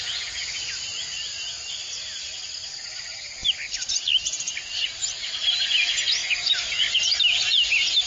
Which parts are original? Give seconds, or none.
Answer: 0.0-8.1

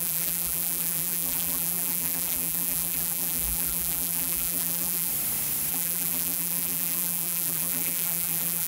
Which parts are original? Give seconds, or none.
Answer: 5.1-5.7

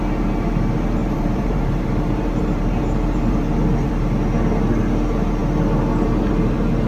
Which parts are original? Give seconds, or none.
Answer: 0.0-1.0; 3.9-6.9